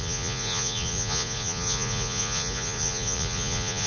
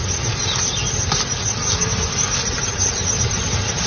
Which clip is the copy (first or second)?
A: first